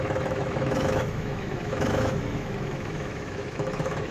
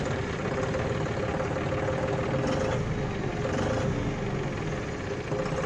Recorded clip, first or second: second